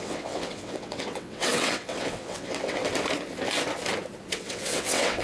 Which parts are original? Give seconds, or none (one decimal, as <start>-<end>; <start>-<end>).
2.8-4.3